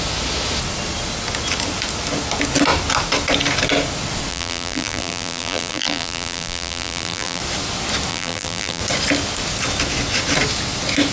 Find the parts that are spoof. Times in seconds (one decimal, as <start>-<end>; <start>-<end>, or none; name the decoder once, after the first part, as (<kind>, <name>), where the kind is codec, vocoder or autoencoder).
4.3-7.4 (vocoder, BigVGAN v2); 8.1-8.8